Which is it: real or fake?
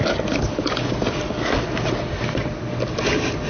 real